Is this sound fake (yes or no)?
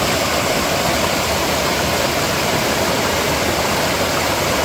no